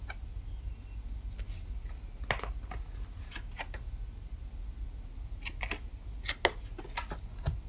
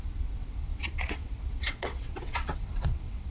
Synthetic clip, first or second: second